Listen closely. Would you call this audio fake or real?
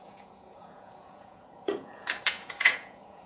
fake